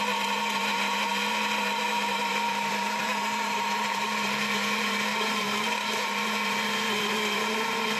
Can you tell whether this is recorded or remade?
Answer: remade